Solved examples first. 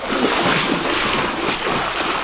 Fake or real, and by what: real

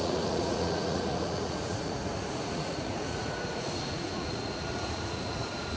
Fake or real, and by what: fake, vocoder, Vocos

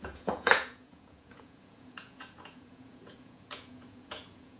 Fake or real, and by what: fake, vocoder, Vocos